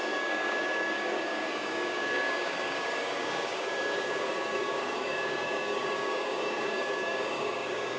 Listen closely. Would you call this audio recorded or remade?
remade